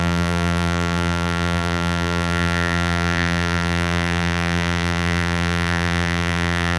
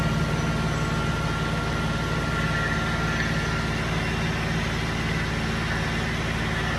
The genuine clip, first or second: second